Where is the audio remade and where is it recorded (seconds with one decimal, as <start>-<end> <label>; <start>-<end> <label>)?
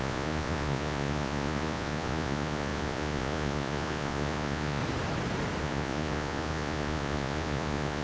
0.0-4.8 remade; 4.8-5.6 recorded; 5.6-8.0 remade